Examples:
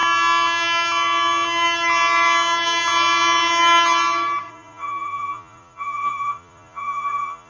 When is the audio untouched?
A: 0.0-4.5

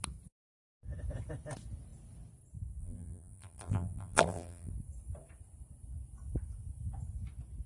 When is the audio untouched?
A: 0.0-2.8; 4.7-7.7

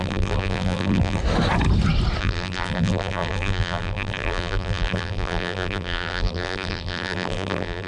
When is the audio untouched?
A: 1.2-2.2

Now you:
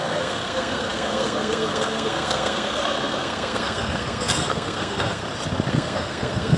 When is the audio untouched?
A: 5.2-5.7

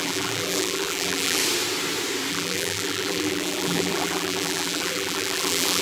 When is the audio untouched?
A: 1.4-2.3

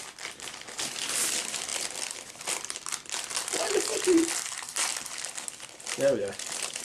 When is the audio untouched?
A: none